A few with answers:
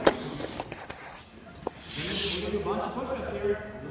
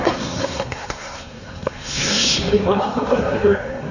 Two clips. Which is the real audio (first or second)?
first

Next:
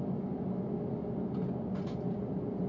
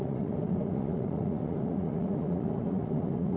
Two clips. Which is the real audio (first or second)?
first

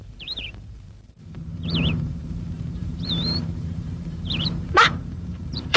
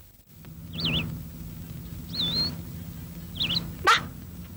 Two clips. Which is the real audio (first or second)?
second